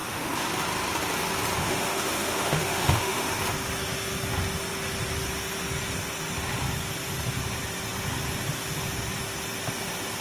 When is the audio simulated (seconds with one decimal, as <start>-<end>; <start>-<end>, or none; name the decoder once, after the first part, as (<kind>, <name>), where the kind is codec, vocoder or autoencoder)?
0.0-0.5 (autoencoder, DAC-VAE); 1.6-3.3